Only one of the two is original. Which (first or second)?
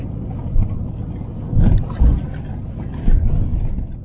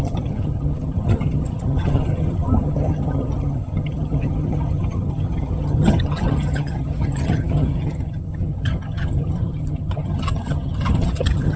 first